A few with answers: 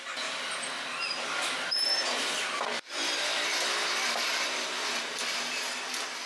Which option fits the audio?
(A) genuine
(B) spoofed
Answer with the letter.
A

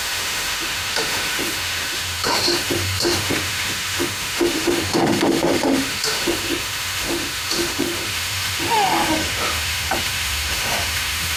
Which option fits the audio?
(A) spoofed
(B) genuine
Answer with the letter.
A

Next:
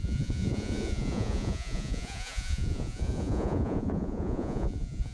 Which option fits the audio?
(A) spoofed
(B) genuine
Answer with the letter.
A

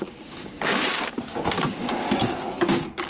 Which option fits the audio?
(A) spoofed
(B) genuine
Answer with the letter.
A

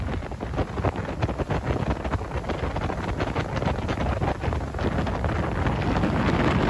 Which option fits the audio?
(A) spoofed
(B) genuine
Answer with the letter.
B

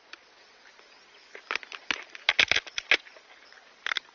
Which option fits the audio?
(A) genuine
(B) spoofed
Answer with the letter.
A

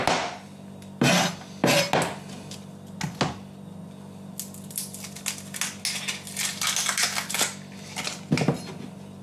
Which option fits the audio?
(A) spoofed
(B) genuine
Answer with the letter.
B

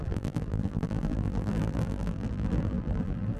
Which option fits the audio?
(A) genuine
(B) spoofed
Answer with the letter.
B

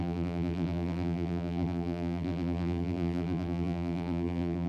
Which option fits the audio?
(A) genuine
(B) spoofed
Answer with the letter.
B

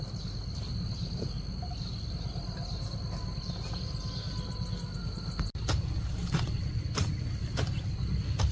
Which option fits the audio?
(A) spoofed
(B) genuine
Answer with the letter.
B